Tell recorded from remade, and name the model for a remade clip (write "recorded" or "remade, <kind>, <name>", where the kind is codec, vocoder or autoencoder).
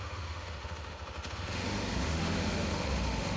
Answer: remade, autoencoder, DAC-VAE